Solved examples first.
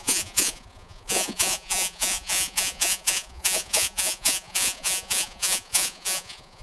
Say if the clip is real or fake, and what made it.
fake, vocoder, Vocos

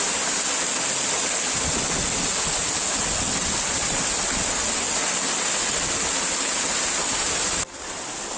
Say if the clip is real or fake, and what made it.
real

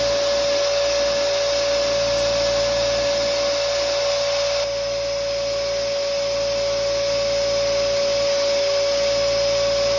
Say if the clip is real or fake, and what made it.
real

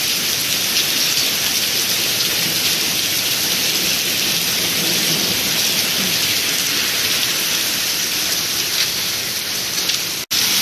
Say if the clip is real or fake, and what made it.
real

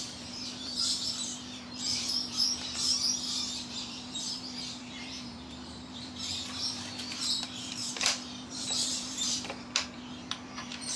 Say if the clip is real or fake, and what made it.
fake, vocoder, BigVGAN v2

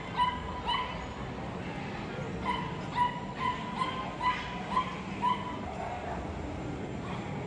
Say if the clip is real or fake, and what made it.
real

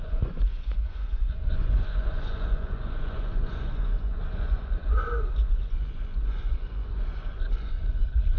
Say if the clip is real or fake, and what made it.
fake, vocoder, Vocos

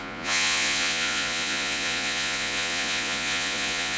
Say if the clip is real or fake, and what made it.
fake, vocoder, Vocos